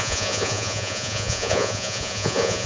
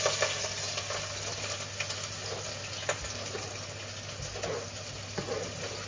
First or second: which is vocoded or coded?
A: first